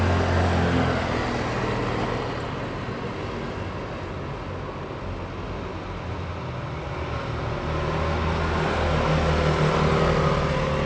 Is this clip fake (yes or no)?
no